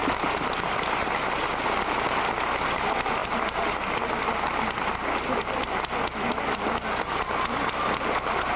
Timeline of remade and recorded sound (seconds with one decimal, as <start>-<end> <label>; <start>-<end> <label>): 0.0-8.6 recorded